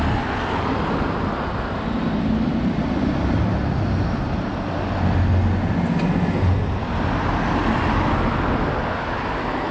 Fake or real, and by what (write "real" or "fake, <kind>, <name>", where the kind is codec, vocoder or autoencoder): real